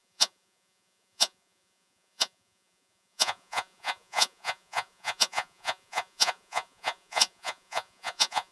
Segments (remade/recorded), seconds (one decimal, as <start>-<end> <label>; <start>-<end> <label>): 0.0-8.5 remade